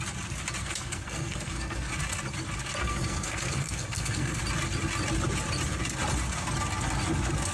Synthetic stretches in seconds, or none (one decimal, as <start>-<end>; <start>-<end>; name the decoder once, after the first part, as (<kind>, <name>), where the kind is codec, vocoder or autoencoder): 0.6-1.9 (codec, SNAC); 2.8-4.4

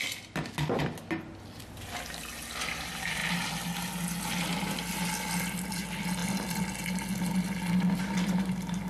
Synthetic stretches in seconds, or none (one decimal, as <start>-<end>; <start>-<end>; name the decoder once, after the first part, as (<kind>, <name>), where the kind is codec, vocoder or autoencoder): none

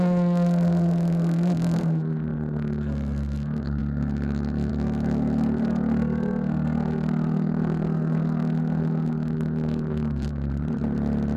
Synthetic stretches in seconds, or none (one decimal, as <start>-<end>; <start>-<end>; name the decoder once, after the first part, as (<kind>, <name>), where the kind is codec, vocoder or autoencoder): 0.0-10.5 (codec, SNAC)

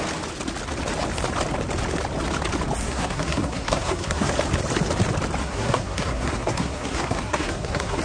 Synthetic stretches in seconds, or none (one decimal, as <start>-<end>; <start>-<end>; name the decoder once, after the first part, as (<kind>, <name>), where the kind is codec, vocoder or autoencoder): 2.8-4.3 (codec, SNAC); 5.4-8.0

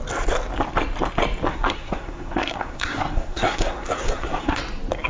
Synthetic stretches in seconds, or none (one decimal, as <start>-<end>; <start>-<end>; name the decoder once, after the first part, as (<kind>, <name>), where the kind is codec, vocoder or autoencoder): 1.5-4.6 (codec, SNAC)